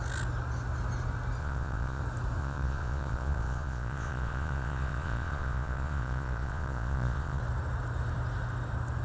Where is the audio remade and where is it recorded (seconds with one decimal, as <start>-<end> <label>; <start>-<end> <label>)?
0.0-1.4 recorded; 1.4-2.0 remade; 2.0-2.4 recorded; 2.4-7.4 remade; 7.4-9.0 recorded